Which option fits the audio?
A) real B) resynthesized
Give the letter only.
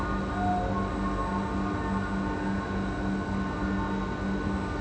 A